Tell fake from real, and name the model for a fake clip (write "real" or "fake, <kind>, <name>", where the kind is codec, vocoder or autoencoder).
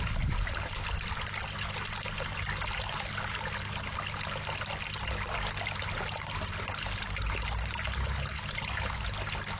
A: real